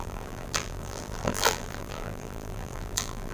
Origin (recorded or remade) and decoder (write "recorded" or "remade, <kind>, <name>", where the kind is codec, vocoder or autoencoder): remade, vocoder, BigVGAN v2